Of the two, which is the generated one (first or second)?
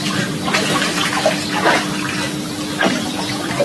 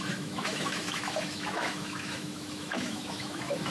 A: second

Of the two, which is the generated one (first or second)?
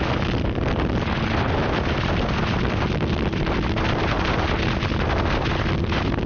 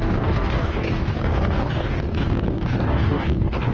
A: second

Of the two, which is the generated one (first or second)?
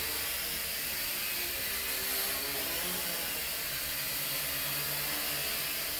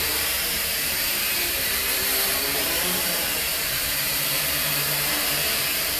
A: second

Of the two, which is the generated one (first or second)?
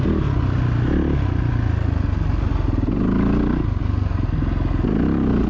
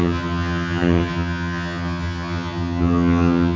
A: second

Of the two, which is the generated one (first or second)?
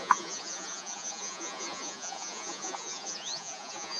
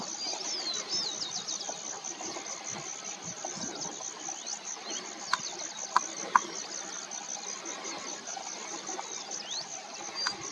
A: first